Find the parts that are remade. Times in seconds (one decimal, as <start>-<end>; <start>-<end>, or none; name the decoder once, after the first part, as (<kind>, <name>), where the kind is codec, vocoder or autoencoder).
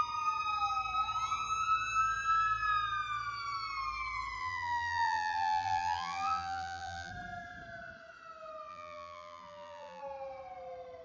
4.4-7.1 (vocoder, BigVGAN v2); 8.7-10.0